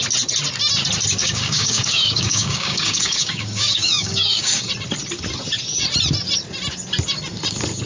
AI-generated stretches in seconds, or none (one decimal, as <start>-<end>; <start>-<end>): 1.2-4.7